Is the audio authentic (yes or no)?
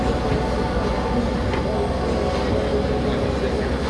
yes